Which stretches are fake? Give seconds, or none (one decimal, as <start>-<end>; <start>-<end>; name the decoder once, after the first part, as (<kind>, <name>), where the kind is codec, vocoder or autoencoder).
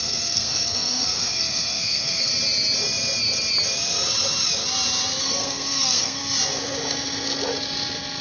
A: 0.0-2.3 (codec, SNAC); 5.2-6.2